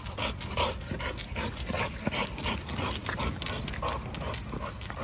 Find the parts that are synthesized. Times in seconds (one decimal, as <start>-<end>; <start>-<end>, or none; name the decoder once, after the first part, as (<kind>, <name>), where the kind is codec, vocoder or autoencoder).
1.2-2.0 (vocoder, BigVGAN v2)